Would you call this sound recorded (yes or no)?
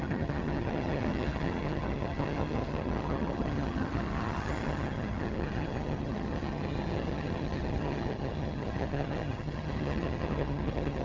no